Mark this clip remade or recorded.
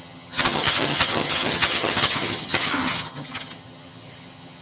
remade